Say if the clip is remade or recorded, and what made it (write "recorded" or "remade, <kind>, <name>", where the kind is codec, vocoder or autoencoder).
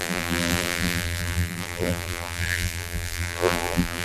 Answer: remade, vocoder, BigVGAN v2